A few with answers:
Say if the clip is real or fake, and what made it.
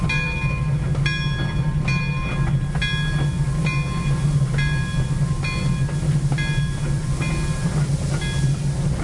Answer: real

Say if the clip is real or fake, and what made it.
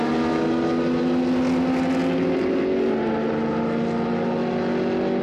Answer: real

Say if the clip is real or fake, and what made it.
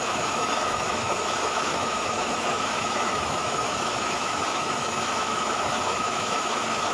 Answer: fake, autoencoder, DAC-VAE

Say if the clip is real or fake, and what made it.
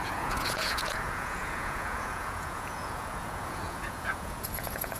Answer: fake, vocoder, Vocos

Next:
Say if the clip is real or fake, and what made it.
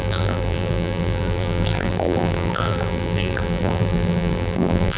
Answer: fake, vocoder, BigVGAN v2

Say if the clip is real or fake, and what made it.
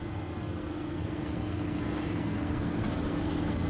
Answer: fake, codec, SNAC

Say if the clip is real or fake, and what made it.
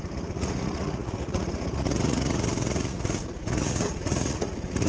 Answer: fake, vocoder, Vocos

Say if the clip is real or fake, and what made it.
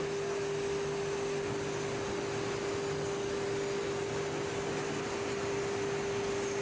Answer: real